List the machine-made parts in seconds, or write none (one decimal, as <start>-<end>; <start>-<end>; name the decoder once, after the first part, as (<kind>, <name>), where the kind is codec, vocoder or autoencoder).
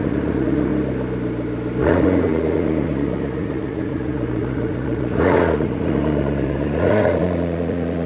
0.0-0.7 (vocoder, Vocos); 1.8-8.1